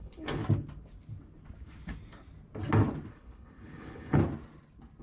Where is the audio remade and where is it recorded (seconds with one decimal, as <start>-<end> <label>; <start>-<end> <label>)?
0.0-0.4 remade; 0.4-3.1 recorded; 3.1-4.2 remade; 4.2-5.0 recorded